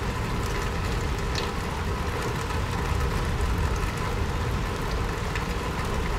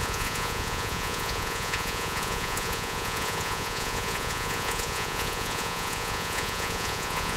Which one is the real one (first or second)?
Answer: first